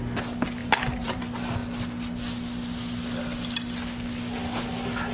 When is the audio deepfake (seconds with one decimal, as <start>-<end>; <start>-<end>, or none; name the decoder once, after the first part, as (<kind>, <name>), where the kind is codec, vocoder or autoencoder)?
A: 0.6-1.2 (vocoder, BigVGAN v2)